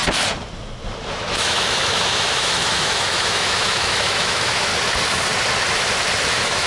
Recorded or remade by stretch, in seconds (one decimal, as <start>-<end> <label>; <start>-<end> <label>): 0.0-1.1 recorded; 1.1-4.7 remade; 4.7-6.3 recorded; 6.3-6.7 remade

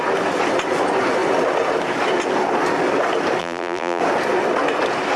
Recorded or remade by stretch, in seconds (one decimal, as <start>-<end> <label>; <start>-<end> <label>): 0.0-3.4 recorded; 3.4-4.0 remade; 4.0-5.2 recorded

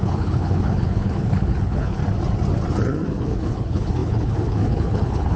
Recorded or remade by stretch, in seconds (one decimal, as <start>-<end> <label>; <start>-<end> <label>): 0.0-2.0 remade; 2.0-3.1 recorded; 3.1-5.4 remade

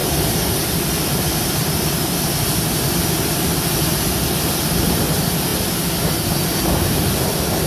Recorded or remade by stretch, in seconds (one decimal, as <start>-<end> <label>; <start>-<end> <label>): 0.0-7.7 remade

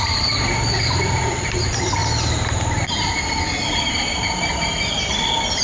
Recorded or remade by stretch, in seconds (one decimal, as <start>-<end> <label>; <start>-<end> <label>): 0.0-2.0 remade; 2.0-5.0 recorded; 5.0-5.6 remade

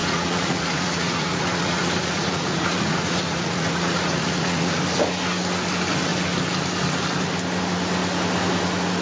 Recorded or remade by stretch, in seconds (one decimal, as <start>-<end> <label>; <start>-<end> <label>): 0.0-4.8 remade; 4.8-9.0 recorded

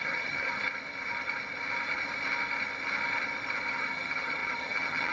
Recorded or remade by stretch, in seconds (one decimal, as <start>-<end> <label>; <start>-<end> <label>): 0.0-0.6 remade; 0.6-3.7 recorded; 3.7-5.1 remade

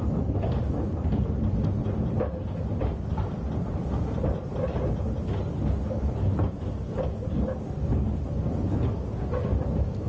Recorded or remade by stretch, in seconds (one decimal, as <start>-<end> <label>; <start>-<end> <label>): 0.0-10.1 recorded